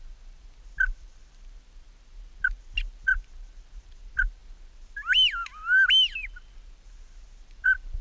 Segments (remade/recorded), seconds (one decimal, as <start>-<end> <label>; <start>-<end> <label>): 0.0-8.0 recorded